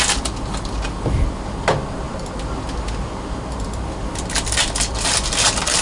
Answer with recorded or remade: recorded